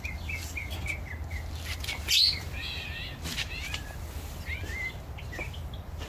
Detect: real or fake real